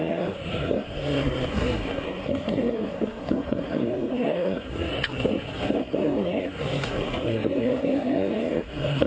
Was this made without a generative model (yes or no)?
no